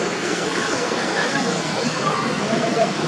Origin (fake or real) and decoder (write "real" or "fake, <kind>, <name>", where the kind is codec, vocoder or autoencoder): fake, codec, SNAC